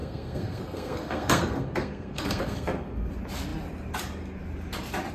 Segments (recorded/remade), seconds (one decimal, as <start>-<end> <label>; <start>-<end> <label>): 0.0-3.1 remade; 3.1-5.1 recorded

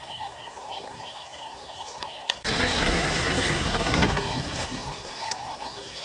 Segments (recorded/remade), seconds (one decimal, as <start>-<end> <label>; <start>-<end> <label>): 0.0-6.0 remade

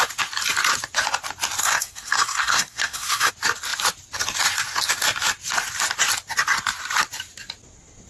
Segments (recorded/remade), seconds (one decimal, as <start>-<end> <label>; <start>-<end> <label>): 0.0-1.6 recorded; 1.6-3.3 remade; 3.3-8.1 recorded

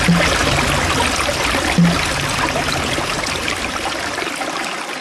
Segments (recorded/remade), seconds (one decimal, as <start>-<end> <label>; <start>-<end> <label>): 0.0-5.0 recorded